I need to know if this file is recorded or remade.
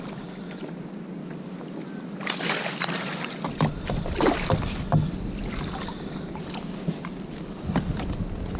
recorded